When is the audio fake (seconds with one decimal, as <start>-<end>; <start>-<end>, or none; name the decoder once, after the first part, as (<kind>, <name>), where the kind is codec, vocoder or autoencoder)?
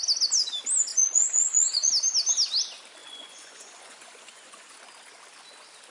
0.9-1.9 (vocoder, Vocos); 3.0-4.8